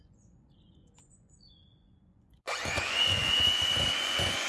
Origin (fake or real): fake